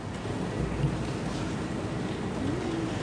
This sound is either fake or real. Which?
real